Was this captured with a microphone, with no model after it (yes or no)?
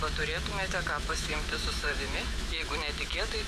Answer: no